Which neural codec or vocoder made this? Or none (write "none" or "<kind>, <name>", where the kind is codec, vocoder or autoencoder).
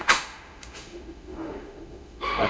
autoencoder, DAC-VAE